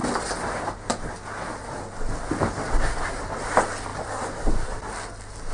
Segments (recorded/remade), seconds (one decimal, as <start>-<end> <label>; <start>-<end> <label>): 0.0-1.1 remade; 1.1-3.9 recorded; 3.9-4.8 remade; 4.8-5.5 recorded